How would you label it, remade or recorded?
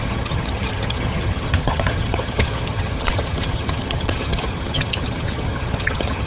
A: remade